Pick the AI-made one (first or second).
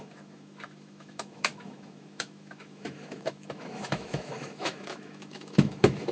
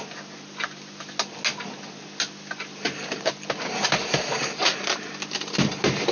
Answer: first